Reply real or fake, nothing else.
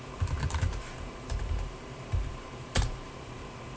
fake